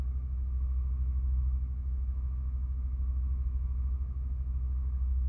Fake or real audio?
fake